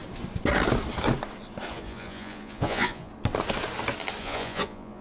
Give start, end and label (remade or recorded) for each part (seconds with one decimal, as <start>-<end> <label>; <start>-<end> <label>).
0.0-1.7 recorded; 1.7-3.1 remade; 3.1-4.2 recorded; 4.2-5.0 remade